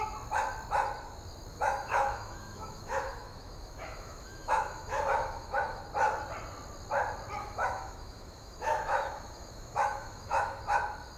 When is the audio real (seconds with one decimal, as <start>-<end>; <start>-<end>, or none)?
0.0-1.5; 5.8-7.4; 10.6-11.2